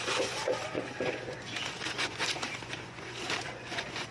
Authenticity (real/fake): fake